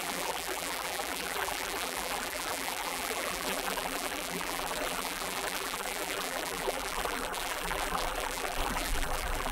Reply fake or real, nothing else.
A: fake